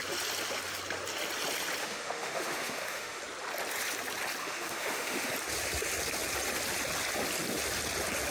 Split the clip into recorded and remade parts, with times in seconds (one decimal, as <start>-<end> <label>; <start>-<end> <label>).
0.0-1.8 recorded; 1.8-3.2 remade; 3.2-4.4 recorded; 4.4-5.3 remade; 5.3-8.3 recorded